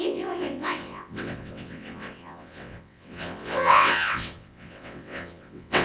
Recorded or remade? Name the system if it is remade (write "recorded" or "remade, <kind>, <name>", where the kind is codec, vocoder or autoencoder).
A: remade, vocoder, WaveNeXt